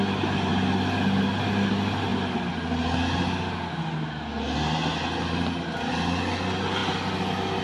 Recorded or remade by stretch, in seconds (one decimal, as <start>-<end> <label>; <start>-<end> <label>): 0.0-7.6 recorded